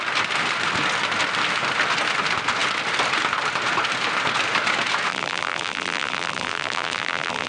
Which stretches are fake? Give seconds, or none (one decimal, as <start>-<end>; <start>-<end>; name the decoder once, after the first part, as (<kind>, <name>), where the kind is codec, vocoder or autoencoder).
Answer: 5.1-7.5 (vocoder, BigVGAN v2)